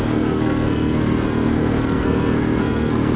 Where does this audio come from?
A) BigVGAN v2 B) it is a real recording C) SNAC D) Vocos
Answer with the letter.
C